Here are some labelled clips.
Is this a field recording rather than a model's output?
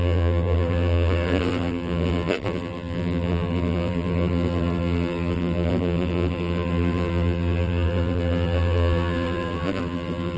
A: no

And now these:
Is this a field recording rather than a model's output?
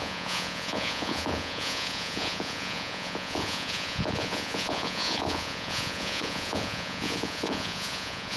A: no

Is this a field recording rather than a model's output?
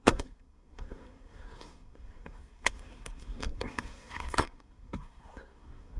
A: no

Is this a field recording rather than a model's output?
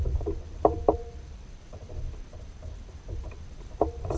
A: yes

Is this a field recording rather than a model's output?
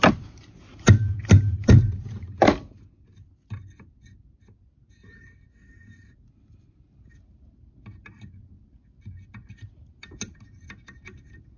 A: yes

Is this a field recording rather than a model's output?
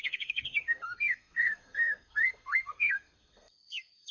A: no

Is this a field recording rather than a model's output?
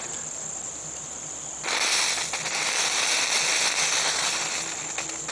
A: yes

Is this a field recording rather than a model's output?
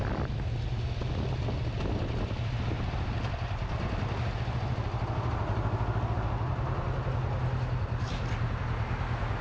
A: yes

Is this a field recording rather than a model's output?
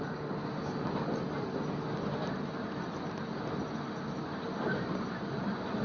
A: yes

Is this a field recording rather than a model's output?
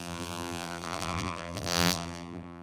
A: no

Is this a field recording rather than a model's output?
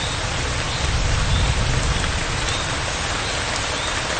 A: yes